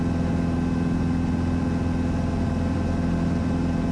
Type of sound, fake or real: real